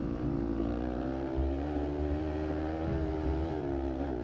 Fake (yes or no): yes